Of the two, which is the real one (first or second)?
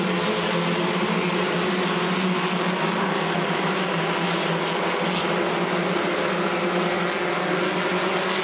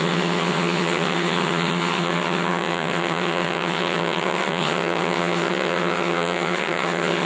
first